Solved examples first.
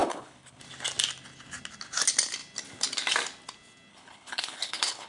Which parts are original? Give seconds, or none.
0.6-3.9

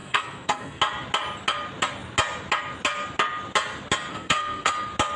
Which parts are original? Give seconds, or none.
0.8-4.1; 4.7-5.2

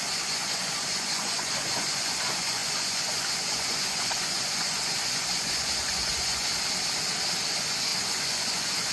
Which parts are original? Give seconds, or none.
6.5-7.5

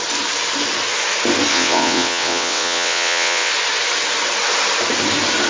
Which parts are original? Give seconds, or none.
0.0-1.5; 3.5-5.5

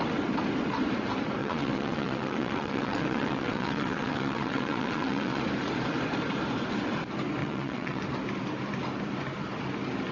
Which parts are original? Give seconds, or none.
0.0-1.4; 5.4-7.4; 8.0-10.1